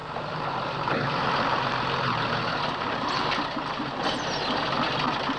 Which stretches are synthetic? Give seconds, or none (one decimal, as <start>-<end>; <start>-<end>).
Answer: 0.0-3.2